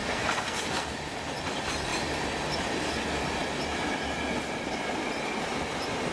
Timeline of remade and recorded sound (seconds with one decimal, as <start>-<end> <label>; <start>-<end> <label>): 0.0-0.9 remade; 0.9-6.1 recorded